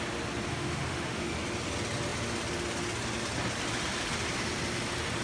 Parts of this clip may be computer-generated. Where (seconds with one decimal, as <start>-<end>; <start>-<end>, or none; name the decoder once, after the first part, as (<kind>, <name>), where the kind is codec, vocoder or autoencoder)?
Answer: 0.5-1.3 (autoencoder, DAC-VAE)